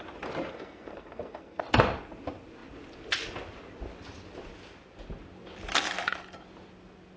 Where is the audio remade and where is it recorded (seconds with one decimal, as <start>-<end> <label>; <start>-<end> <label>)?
0.0-0.5 recorded; 0.5-1.6 remade; 1.6-7.2 recorded